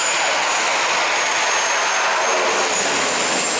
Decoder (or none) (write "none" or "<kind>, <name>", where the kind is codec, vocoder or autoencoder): none